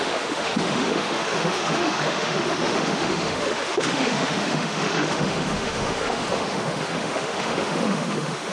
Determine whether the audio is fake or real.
fake